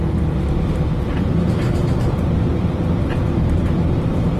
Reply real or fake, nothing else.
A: fake